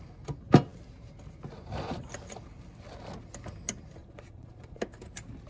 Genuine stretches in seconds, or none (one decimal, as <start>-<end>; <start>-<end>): 0.0-4.0; 4.8-5.5